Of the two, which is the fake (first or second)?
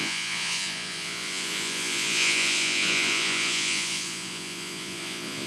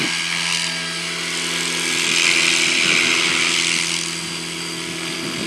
first